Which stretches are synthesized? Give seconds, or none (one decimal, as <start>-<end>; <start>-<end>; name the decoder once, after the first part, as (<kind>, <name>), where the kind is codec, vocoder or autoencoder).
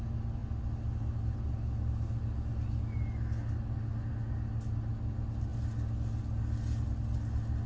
none